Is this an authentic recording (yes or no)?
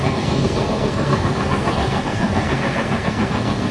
no